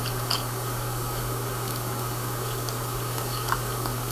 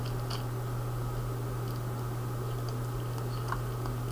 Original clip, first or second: second